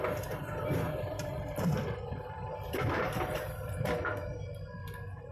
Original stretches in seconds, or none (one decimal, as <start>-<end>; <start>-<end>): 0.0-0.4; 3.6-5.3